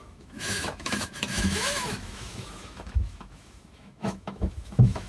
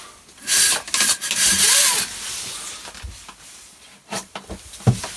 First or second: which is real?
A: second